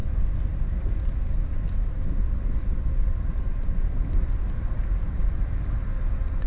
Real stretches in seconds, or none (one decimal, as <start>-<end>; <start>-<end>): 0.0-6.5